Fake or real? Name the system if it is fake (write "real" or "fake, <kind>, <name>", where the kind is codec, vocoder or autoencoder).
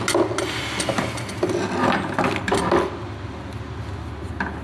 real